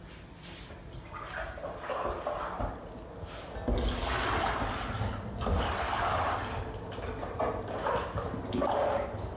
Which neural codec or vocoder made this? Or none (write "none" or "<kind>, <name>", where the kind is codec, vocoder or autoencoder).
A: none